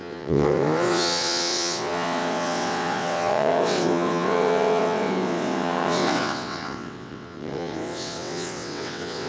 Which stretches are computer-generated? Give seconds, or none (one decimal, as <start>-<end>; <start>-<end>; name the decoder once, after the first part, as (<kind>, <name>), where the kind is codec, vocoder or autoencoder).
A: 0.0-9.3 (vocoder, WaveNeXt)